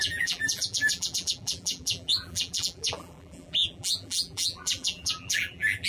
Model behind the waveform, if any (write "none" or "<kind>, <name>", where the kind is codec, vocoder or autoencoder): vocoder, BigVGAN v2